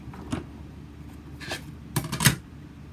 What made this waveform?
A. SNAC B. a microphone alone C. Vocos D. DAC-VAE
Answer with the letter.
B